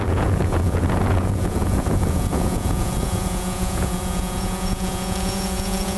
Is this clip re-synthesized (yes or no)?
yes